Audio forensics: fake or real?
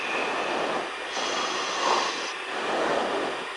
real